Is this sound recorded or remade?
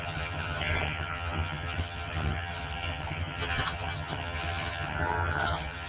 remade